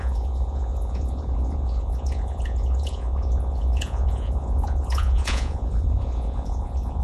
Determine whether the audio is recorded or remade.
remade